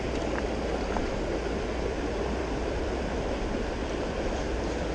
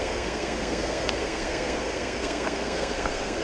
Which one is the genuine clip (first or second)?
first